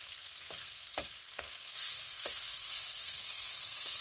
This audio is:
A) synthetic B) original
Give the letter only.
A